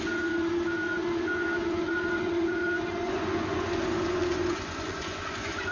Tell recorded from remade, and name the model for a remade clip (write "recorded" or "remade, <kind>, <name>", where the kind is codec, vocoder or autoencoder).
remade, vocoder, Vocos